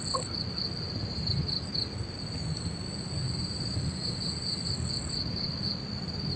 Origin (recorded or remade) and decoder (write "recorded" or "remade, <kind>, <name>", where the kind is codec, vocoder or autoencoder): recorded